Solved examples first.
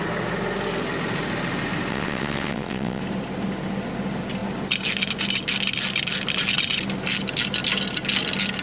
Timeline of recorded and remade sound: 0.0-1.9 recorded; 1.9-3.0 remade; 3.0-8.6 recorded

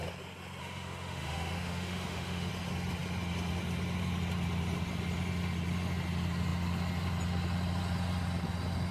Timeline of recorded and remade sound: 0.0-0.6 recorded; 0.6-2.5 remade; 2.5-8.9 recorded

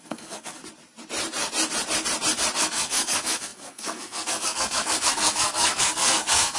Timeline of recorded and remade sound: 0.0-0.6 remade; 0.6-2.6 recorded; 2.6-6.6 remade

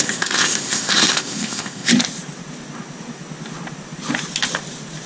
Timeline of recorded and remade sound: 0.0-1.9 remade; 1.9-5.1 recorded

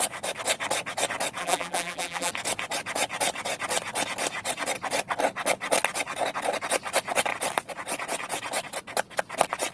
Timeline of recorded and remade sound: 0.0-1.4 recorded; 1.4-2.3 remade; 2.3-9.7 recorded